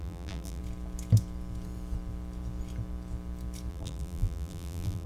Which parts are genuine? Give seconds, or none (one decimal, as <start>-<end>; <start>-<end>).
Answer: 0.6-3.7